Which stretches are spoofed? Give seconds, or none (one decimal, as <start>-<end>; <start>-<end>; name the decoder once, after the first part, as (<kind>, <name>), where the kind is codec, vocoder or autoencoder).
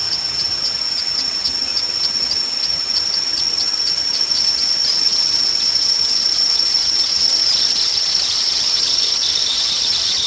0.0-10.3 (vocoder, HiFi-GAN)